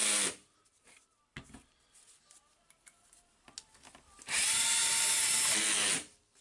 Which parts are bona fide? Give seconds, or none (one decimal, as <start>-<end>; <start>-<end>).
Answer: 0.0-6.4